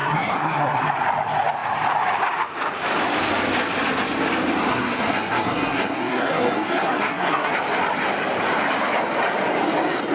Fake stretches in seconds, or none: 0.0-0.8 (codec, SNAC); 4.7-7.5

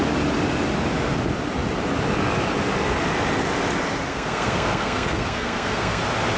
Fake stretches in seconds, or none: 4.1-6.0 (codec, SNAC)

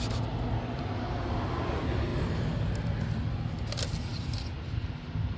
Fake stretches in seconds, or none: none

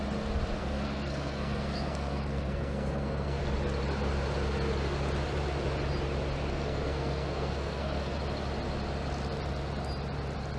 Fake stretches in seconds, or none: 0.6-3.4 (codec, SNAC); 6.5-8.2

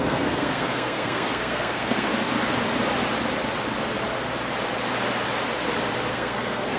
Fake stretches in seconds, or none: 0.0-2.1 (codec, SNAC); 6.1-6.8